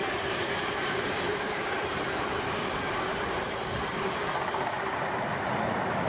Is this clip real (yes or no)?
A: no